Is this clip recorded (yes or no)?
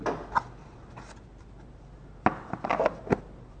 yes